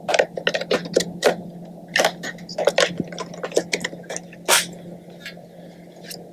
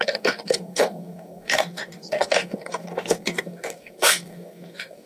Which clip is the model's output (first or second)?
second